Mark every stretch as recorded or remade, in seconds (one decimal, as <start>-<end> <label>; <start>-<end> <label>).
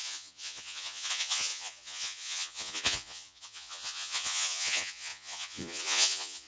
0.0-6.5 remade